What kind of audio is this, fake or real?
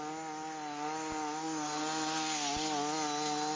real